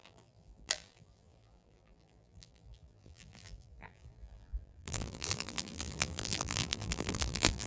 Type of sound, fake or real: fake